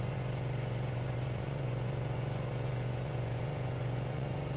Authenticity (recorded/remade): remade